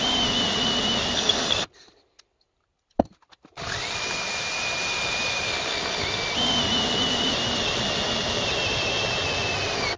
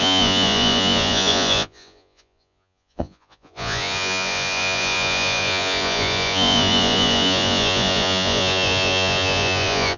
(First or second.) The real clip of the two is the first